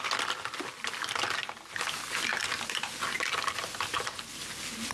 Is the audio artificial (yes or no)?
no